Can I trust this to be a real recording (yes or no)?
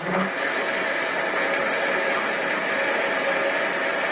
yes